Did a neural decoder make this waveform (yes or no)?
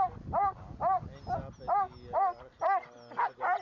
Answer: no